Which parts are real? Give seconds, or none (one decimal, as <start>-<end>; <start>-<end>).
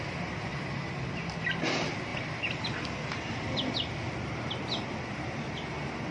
0.0-0.5; 1.1-2.1; 4.5-6.1